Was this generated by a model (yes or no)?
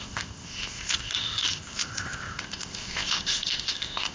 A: yes